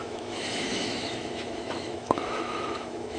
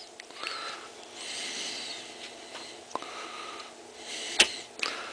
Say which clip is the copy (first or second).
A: first